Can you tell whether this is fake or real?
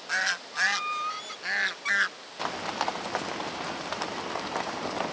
real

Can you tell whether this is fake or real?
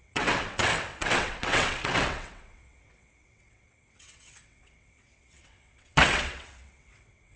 fake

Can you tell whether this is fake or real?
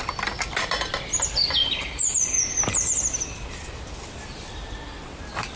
real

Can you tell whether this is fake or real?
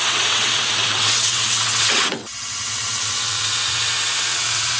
fake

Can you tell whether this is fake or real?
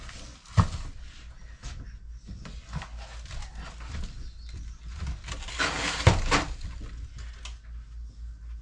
real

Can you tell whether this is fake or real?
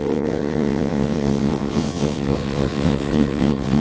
fake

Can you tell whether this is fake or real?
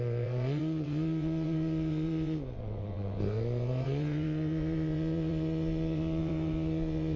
fake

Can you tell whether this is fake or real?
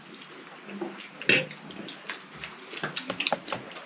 real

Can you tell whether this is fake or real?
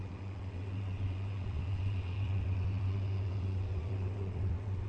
fake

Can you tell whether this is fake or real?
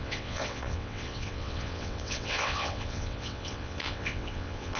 fake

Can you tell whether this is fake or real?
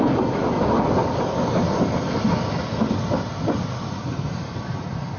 real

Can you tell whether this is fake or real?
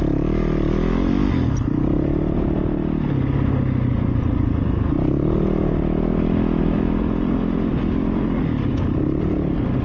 real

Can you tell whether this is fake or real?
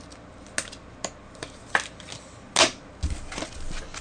real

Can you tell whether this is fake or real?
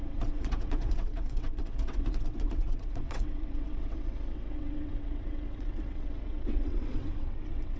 fake